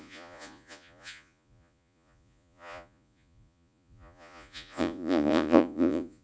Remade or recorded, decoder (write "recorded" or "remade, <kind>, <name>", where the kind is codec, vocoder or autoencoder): remade, vocoder, Vocos